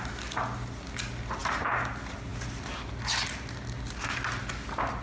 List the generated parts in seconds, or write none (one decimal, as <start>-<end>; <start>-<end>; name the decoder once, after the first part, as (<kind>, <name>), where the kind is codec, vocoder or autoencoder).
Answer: none